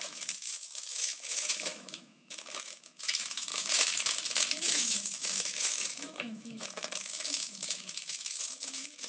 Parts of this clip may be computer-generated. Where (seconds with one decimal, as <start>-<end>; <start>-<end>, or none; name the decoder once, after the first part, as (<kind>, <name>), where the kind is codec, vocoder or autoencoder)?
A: 0.0-9.1 (autoencoder, DAC-VAE)